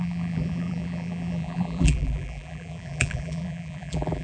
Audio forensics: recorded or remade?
remade